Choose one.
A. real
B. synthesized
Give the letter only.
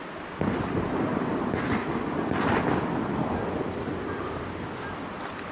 A